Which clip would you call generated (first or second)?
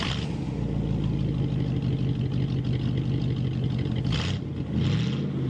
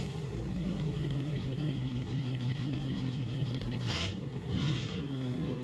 second